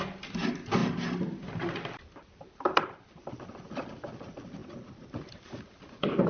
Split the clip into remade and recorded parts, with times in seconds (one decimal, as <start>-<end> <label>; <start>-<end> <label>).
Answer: 0.0-6.3 recorded